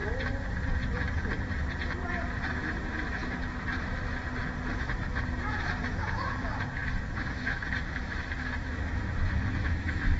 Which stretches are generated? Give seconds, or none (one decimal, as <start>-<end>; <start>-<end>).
2.5-3.2; 4.8-10.2